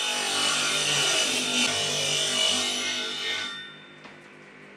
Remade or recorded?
recorded